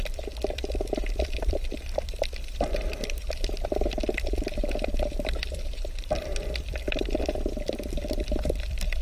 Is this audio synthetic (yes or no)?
yes